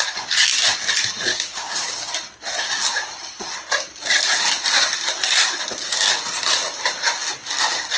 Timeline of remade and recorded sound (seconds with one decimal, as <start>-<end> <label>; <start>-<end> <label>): 0.0-1.3 recorded; 1.3-2.1 remade; 2.1-8.0 recorded